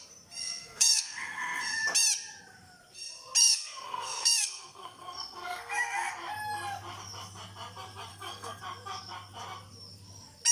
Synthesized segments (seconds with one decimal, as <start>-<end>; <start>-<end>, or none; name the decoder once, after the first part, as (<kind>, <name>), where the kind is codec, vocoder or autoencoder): 0.4-1.6 (codec, SNAC); 3.4-6.1; 8.1-8.6